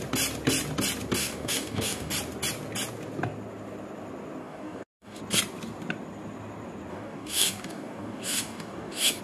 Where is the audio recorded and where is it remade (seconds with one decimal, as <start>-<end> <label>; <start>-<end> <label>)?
0.0-1.2 recorded; 1.2-2.1 remade; 2.1-4.4 recorded; 4.4-5.2 remade; 5.2-6.9 recorded; 6.9-9.2 remade